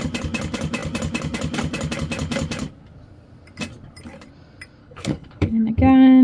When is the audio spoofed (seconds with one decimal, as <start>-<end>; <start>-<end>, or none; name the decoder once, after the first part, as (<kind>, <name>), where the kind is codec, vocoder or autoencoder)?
4.8-5.7 (codec, HILCodec)